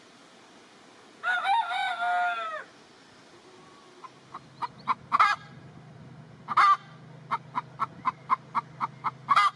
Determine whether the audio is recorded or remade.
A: recorded